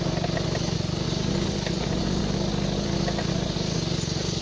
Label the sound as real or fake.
real